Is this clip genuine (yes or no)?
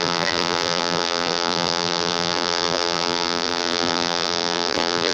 no